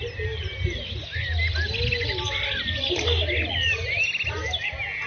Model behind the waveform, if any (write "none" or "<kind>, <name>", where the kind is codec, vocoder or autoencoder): none